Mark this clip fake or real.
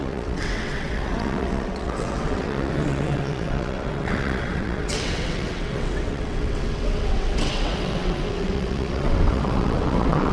fake